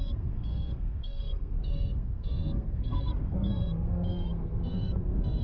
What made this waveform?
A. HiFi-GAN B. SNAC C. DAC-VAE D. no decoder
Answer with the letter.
B